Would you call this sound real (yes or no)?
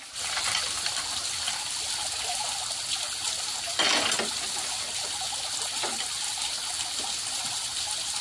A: yes